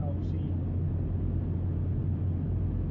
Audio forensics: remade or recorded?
recorded